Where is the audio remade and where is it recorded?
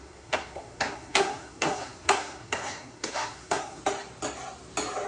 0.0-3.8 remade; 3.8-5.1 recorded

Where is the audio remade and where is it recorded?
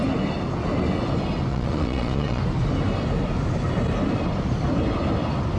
0.0-1.5 recorded; 1.5-2.4 remade; 2.4-5.6 recorded